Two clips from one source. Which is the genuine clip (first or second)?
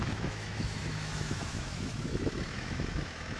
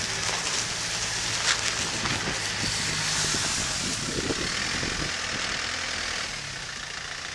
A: second